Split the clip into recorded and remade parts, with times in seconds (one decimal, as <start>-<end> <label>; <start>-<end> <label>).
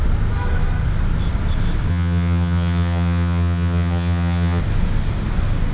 0.0-1.9 recorded; 1.9-4.6 remade; 4.6-5.7 recorded